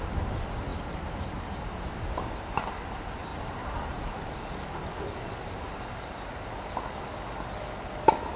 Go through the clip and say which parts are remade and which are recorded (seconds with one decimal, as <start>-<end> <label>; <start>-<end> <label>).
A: 0.0-0.7 recorded; 0.7-2.7 remade; 2.7-3.3 recorded; 3.3-4.2 remade; 4.2-8.4 recorded